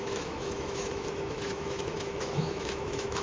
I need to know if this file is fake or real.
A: fake